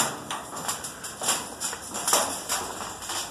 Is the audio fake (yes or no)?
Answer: no